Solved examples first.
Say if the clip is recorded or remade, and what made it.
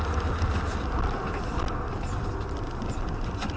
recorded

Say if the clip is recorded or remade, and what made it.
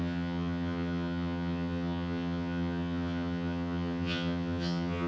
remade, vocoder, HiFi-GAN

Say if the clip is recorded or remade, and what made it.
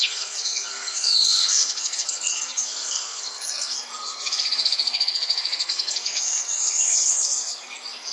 remade, codec, SNAC